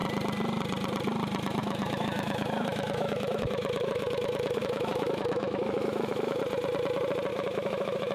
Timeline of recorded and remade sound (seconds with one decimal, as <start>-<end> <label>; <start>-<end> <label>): 0.0-1.6 recorded; 1.6-6.4 remade; 6.4-7.3 recorded; 7.3-8.1 remade

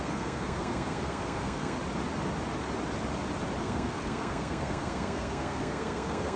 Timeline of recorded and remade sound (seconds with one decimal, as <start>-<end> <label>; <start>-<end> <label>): 0.0-1.8 remade; 1.8-3.6 recorded; 3.6-6.4 remade

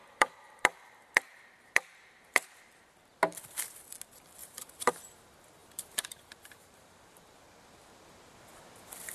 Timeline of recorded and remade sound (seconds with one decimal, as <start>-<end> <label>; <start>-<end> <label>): 0.0-2.6 remade; 2.6-4.4 recorded; 4.4-4.9 remade; 4.9-5.6 recorded; 5.6-7.4 remade; 7.4-9.1 recorded

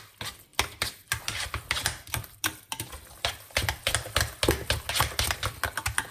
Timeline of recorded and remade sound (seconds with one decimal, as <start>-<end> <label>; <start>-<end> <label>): 0.0-0.5 recorded; 0.5-4.2 remade; 4.2-6.1 recorded

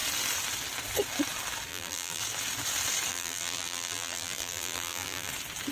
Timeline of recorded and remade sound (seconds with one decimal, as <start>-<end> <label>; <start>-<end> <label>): 0.0-1.7 recorded; 1.7-2.2 remade; 2.2-3.1 recorded; 3.1-5.3 remade; 5.3-5.7 recorded

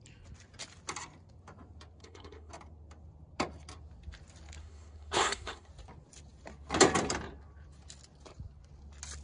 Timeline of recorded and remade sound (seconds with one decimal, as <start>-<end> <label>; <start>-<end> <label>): 0.0-2.0 recorded; 2.0-2.5 remade; 2.5-4.6 recorded; 4.6-5.7 remade; 5.7-9.2 recorded

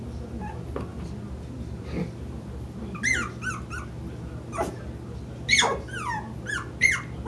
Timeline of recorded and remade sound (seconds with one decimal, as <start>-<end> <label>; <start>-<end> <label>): 0.0-7.3 recorded